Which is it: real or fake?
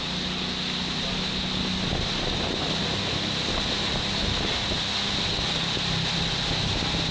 real